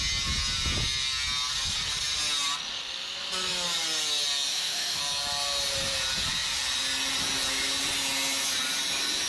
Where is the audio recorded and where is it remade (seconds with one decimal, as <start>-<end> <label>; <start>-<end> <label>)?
0.0-4.5 recorded; 4.5-5.0 remade; 5.0-9.3 recorded